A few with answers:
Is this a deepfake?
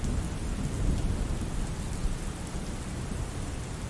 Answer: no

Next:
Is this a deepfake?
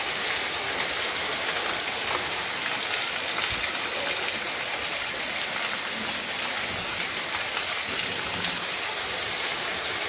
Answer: no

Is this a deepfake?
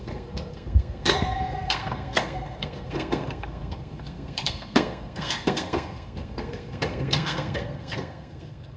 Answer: yes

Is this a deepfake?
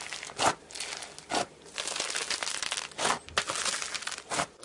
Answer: no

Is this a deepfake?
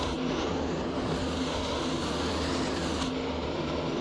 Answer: no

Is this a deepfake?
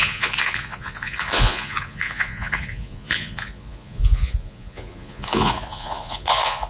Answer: yes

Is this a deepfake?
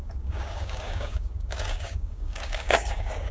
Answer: yes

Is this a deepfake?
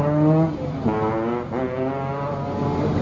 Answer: no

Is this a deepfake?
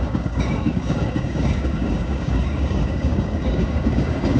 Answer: yes